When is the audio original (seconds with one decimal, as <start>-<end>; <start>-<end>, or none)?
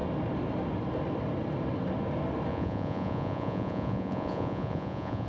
0.0-2.5